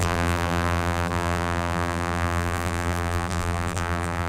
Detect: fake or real fake